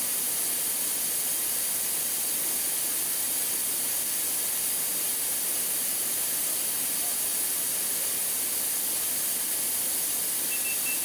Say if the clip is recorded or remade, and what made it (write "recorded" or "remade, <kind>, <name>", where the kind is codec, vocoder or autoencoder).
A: recorded